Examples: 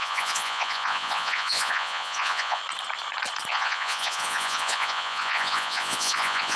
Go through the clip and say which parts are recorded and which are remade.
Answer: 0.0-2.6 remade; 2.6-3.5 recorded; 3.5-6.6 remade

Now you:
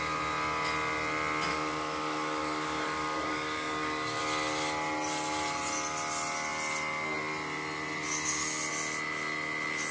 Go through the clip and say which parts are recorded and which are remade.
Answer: 0.0-1.5 recorded; 1.5-4.2 remade; 4.2-9.9 recorded